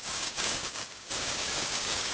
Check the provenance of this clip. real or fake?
fake